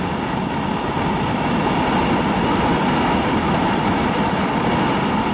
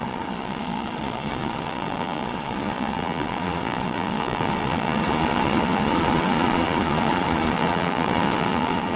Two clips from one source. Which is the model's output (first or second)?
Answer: second